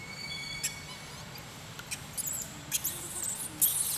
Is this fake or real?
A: real